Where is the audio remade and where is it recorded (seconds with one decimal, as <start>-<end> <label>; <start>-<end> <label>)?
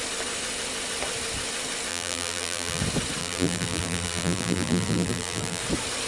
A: 0.0-1.9 recorded; 1.9-2.8 remade; 2.8-3.2 recorded; 3.2-5.6 remade; 5.6-6.1 recorded